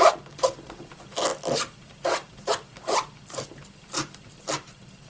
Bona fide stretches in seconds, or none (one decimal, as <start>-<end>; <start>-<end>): 0.0-5.1